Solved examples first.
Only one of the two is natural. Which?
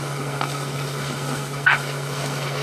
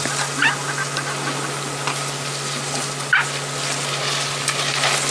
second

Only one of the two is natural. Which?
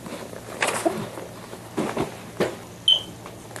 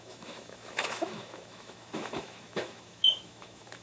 first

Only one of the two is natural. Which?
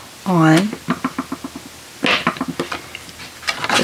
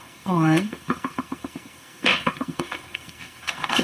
first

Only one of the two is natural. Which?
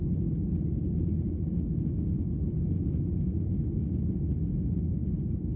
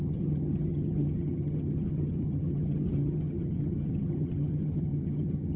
first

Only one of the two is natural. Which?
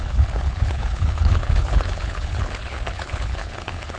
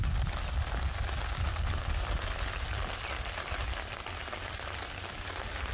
second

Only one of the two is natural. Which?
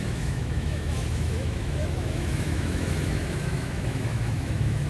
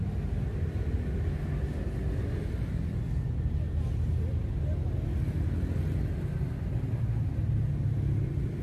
second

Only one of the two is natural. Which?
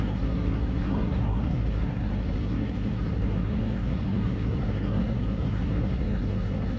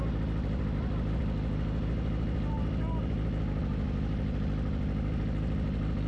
second